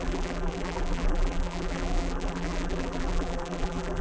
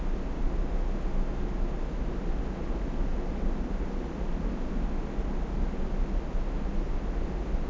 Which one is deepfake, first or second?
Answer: first